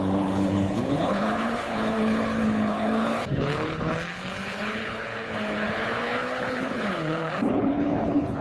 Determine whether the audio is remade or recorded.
remade